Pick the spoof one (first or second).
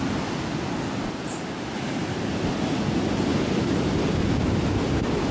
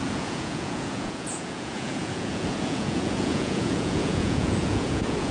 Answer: second